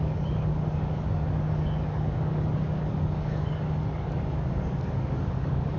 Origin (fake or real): fake